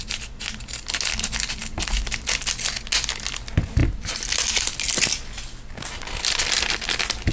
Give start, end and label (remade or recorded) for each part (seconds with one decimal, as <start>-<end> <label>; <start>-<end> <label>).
0.0-7.3 recorded